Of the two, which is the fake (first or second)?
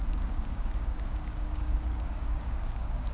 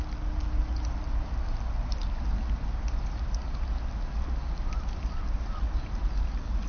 first